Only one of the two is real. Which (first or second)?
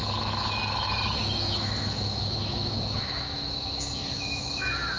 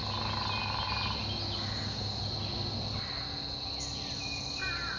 second